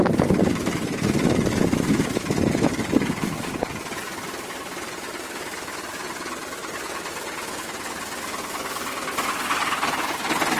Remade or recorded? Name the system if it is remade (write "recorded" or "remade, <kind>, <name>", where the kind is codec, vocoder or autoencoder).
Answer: recorded